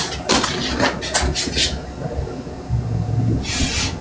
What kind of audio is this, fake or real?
real